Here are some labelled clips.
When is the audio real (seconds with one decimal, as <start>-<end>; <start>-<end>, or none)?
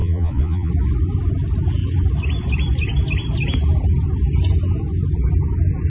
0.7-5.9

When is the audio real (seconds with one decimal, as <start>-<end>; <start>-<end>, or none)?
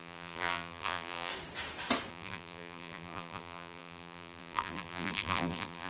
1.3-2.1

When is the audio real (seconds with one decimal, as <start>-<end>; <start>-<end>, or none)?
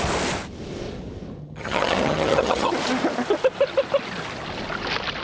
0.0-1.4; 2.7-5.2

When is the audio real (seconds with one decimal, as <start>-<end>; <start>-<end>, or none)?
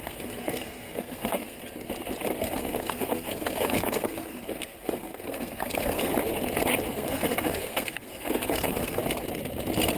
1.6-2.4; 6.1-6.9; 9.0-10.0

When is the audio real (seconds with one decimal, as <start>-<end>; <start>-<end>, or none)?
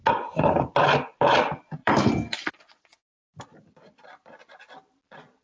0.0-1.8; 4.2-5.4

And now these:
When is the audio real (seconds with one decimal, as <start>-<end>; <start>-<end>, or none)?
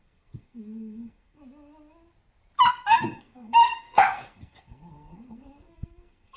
1.4-2.7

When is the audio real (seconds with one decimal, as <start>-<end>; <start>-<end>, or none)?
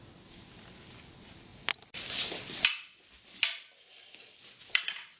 0.0-5.2